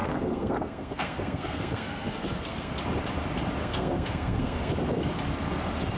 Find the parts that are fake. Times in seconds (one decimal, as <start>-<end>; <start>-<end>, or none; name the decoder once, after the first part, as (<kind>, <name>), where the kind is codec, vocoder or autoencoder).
0.0-2.8 (codec, SNAC); 3.6-4.7